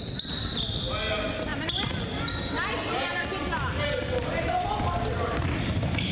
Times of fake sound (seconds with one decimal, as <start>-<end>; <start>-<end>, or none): none